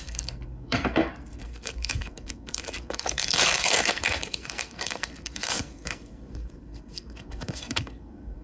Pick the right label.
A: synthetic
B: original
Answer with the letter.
A